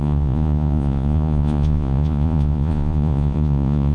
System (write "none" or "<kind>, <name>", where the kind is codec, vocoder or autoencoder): vocoder, Vocos